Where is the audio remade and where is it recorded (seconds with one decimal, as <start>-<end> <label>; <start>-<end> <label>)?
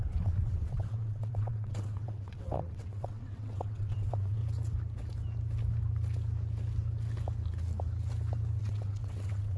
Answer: 0.0-4.4 remade; 4.4-8.6 recorded; 8.6-9.6 remade